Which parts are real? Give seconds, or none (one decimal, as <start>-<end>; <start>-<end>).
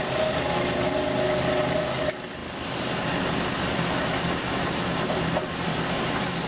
0.0-6.5